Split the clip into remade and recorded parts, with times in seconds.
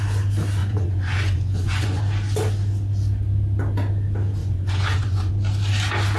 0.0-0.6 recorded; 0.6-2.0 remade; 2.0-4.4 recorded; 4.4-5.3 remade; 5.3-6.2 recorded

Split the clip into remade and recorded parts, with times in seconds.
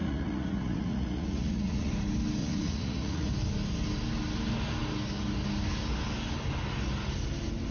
0.0-1.9 remade; 1.9-2.4 recorded; 2.4-3.3 remade; 3.3-7.7 recorded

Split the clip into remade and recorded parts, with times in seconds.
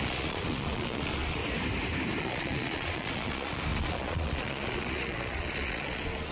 0.0-1.4 remade; 1.4-2.2 recorded; 2.2-6.3 remade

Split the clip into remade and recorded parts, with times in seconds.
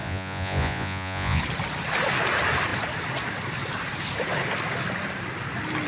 0.0-1.4 remade; 1.4-5.9 recorded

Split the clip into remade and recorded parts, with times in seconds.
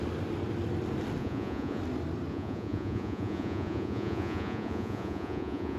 0.0-1.2 recorded; 1.2-1.8 remade; 1.8-2.3 recorded; 2.3-5.8 remade